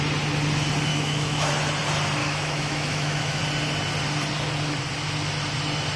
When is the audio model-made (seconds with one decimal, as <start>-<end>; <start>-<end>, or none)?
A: 0.9-1.5; 2.2-3.4